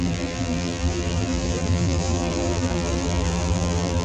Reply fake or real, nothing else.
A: fake